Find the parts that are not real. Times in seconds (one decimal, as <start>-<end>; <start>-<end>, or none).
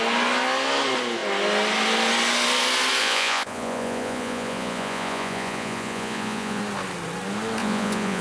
3.0-6.6; 7.6-8.2